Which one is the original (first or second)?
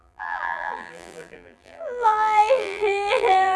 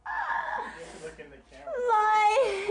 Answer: second